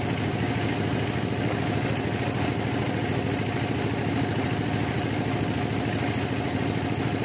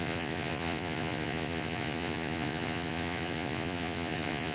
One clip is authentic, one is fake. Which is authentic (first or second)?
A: first